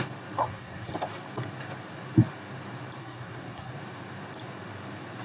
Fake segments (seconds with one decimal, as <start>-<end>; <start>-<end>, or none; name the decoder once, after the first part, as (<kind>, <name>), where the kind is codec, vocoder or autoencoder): 0.4-0.9 (codec, SNAC); 3.0-3.7